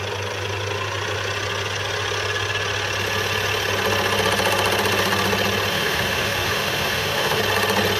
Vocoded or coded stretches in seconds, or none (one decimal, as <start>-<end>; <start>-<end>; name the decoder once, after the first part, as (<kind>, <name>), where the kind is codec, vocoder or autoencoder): 5.7-7.4 (autoencoder, DAC-VAE)